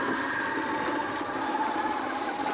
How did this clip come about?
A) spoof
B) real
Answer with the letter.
B